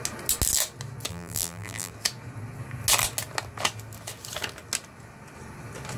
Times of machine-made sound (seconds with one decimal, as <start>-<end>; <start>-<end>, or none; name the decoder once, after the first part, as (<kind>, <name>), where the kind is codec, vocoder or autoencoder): 1.1-1.9 (vocoder, BigVGAN v2)